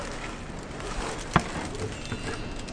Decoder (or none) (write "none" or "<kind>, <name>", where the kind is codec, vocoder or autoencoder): none